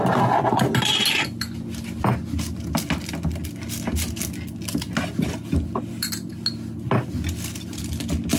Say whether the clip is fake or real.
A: real